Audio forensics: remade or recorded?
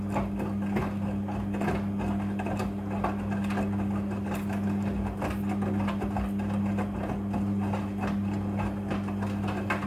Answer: recorded